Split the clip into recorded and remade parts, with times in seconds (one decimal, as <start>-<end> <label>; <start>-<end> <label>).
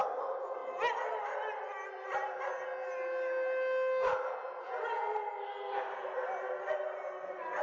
0.0-7.6 recorded